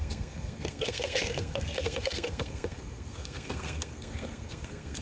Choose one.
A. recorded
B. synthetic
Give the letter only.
B